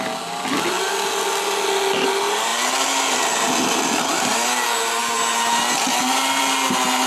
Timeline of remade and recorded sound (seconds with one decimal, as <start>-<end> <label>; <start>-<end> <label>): 0.0-7.1 recorded